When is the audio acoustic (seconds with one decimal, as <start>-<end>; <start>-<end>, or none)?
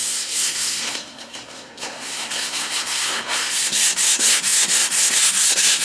none